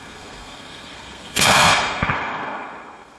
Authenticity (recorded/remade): remade